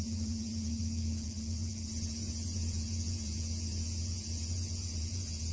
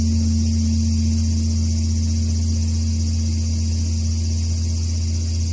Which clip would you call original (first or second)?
second